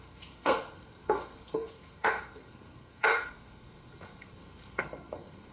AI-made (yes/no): yes